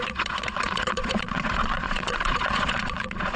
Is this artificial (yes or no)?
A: yes